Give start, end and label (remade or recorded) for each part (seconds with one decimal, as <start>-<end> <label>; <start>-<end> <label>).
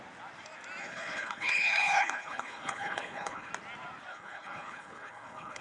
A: 0.0-0.8 recorded; 0.8-3.5 remade; 3.5-4.1 recorded; 4.1-5.6 remade